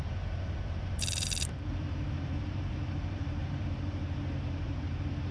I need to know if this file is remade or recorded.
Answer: remade